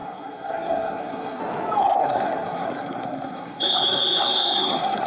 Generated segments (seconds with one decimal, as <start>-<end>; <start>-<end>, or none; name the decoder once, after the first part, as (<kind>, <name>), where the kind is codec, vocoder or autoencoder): 0.0-1.4 (codec, SNAC); 1.8-5.1

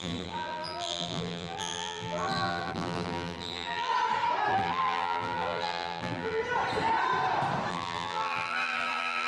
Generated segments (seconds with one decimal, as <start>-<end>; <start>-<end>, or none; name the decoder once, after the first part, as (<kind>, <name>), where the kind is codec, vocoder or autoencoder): 0.0-3.9 (vocoder, BigVGAN v2); 4.5-6.4; 7.7-9.3

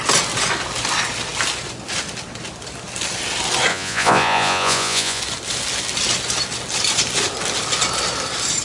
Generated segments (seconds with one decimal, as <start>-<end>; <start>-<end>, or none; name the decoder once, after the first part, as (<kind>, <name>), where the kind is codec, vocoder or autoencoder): 3.7-5.2 (vocoder, Vocos)

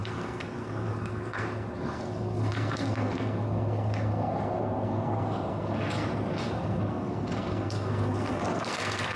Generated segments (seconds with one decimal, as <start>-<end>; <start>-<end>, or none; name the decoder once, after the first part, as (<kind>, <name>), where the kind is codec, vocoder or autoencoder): 0.0-9.2 (codec, SNAC)

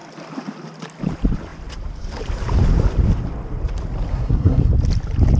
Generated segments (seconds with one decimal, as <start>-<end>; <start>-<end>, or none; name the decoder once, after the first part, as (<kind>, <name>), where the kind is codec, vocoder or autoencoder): 4.1-4.7 (codec, SNAC)

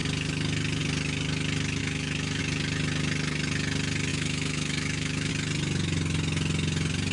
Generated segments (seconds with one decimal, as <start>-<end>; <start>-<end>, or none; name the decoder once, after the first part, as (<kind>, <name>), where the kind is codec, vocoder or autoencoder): 1.8-2.4 (autoencoder, DAC-VAE); 4.1-5.3